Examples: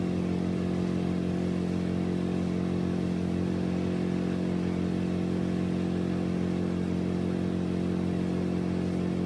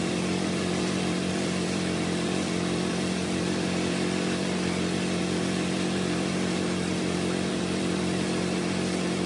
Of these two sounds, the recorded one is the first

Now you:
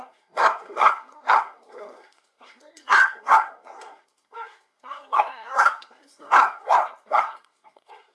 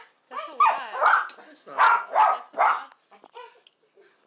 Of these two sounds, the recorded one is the second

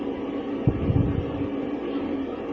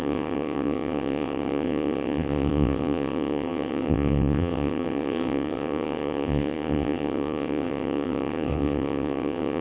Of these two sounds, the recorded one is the first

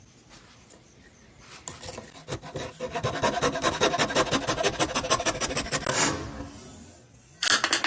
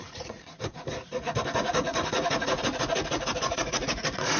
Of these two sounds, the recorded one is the first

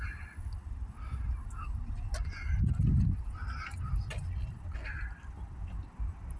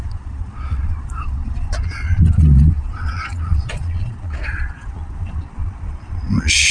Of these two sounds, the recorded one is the first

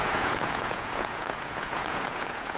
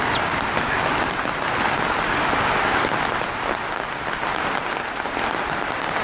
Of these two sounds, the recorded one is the second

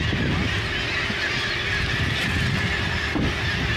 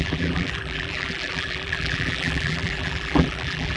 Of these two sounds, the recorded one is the first